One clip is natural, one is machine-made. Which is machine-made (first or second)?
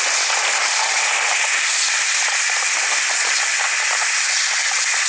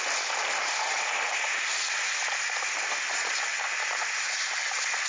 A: first